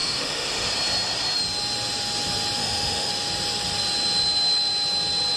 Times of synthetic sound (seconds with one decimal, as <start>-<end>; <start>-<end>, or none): 0.0-0.7; 2.6-3.1